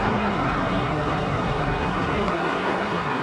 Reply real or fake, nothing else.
fake